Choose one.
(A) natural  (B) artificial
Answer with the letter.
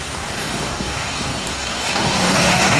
B